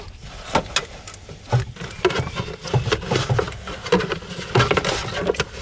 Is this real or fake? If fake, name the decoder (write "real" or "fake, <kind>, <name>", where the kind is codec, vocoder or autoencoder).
real